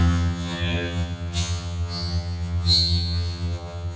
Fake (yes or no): yes